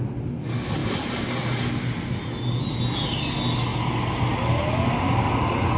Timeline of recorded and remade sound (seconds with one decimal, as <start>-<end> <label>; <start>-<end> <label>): 0.0-5.8 recorded